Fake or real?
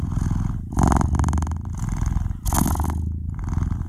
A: real